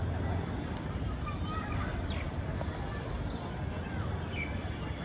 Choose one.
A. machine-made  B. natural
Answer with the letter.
B